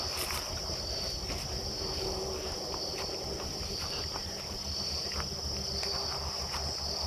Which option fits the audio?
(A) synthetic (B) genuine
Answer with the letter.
B